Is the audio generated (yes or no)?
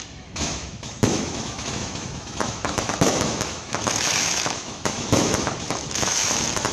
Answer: yes